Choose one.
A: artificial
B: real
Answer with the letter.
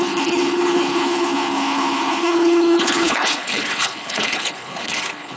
A